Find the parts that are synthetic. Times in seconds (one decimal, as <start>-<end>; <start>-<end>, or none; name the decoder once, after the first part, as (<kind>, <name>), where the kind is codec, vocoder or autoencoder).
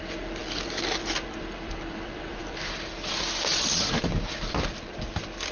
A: 0.0-2.4 (vocoder, BigVGAN v2); 4.4-5.5